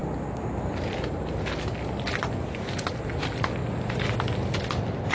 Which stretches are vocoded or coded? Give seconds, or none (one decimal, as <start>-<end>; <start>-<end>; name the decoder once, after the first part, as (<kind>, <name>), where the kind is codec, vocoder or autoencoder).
none